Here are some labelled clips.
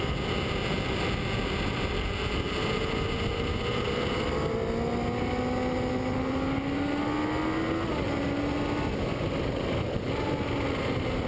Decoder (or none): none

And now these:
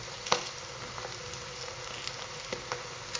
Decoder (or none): none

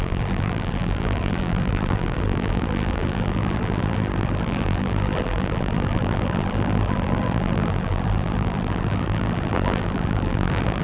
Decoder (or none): vocoder, BigVGAN v2